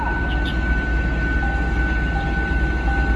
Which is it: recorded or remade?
recorded